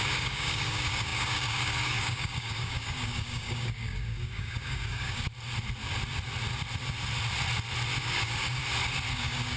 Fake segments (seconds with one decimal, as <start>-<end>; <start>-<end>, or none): 0.0-5.3; 8.0-8.6; 9.1-9.6